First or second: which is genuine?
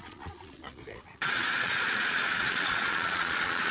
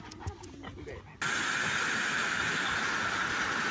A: second